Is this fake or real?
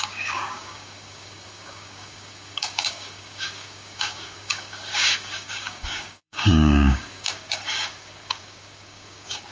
fake